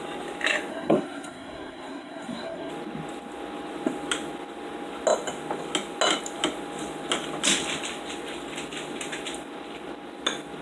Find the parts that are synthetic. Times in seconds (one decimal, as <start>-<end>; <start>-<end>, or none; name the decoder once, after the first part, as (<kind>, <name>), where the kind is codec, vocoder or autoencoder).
0.7-2.7 (codec, SNAC)